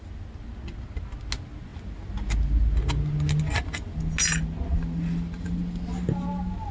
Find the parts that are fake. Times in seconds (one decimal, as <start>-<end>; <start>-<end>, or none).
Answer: none